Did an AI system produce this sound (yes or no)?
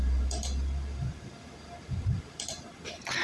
no